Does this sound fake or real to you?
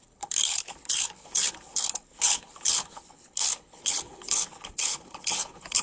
fake